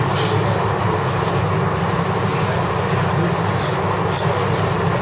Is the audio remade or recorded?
recorded